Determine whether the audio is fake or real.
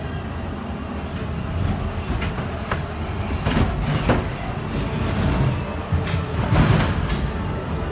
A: real